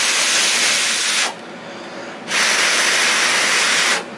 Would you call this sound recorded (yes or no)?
yes